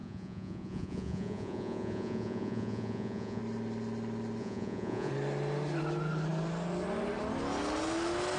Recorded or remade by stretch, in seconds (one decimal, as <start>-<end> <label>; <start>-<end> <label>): 0.0-3.4 remade; 3.4-4.4 recorded; 4.4-5.1 remade; 5.1-8.4 recorded